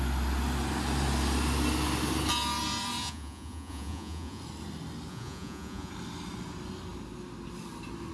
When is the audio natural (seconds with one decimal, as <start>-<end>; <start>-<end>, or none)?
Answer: 0.0-3.0; 4.4-5.1; 5.9-8.1